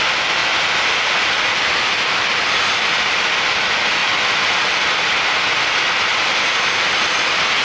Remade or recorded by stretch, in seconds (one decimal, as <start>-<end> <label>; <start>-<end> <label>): 0.0-7.6 recorded